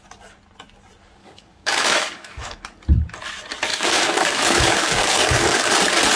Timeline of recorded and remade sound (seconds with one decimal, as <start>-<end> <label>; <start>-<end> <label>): 0.0-1.2 recorded; 1.2-2.6 remade; 2.6-3.7 recorded; 3.7-5.7 remade; 5.7-6.2 recorded